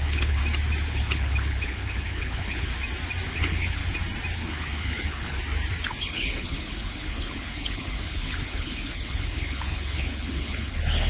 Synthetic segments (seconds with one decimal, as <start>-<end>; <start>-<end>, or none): 0.0-0.4; 0.9-2.7; 3.3-3.8; 4.3-5.4; 6.0-11.1